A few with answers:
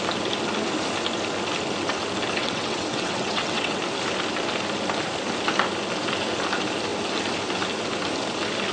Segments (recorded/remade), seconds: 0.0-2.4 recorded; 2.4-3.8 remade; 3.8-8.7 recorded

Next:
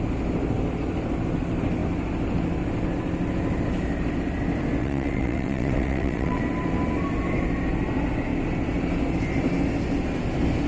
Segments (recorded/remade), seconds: 0.0-4.8 recorded; 4.8-6.4 remade; 6.4-10.7 recorded

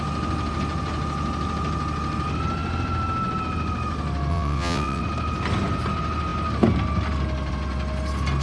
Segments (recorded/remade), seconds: 0.0-4.3 recorded; 4.3-5.0 remade; 5.0-8.4 recorded

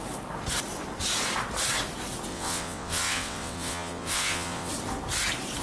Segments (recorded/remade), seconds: 0.0-2.3 recorded; 2.3-4.7 remade; 4.7-5.6 recorded